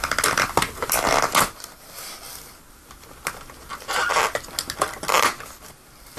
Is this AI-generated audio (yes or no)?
no